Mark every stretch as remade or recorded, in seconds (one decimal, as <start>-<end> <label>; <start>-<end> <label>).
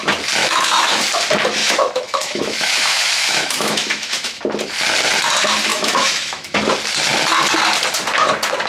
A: 0.0-0.4 recorded; 0.4-1.0 remade; 1.0-1.6 recorded; 1.6-4.4 remade; 4.4-5.7 recorded; 5.7-6.6 remade; 6.6-8.7 recorded